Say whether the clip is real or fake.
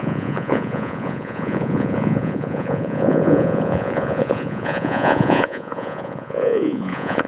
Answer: fake